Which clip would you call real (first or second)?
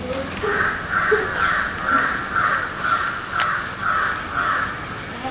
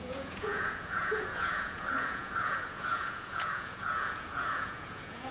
first